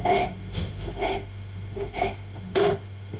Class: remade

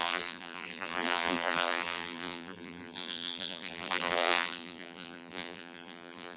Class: remade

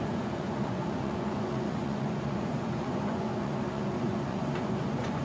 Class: remade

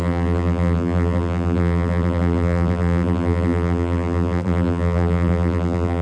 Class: remade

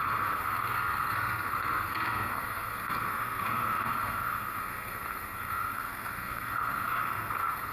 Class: remade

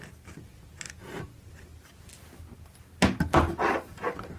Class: recorded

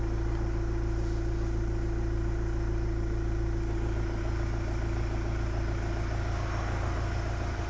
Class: recorded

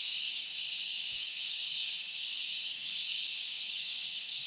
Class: remade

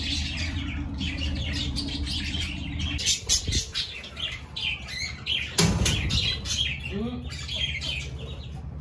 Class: recorded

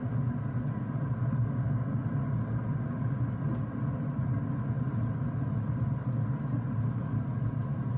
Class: recorded